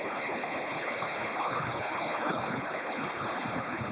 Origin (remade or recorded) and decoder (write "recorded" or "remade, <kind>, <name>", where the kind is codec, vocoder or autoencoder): remade, codec, HILCodec